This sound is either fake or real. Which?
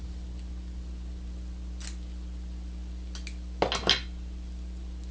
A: real